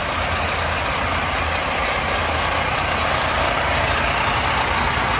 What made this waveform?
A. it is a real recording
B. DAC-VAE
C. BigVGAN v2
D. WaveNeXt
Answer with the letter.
A